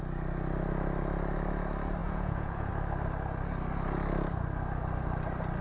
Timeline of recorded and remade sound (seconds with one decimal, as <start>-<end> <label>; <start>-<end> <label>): 0.0-2.0 recorded; 2.0-2.7 remade; 2.7-5.6 recorded